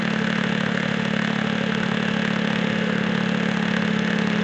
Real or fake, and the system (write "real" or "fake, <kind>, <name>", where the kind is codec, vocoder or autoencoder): fake, autoencoder, DAC-VAE